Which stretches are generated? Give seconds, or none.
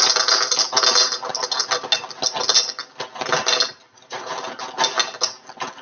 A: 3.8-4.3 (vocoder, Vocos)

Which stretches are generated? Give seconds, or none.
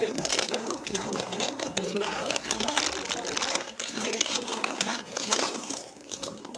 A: 0.0-2.8 (codec, SNAC); 3.5-6.6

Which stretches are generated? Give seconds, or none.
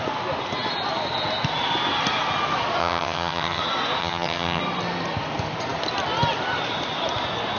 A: 2.8-3.6 (vocoder, HiFi-GAN); 4.0-4.6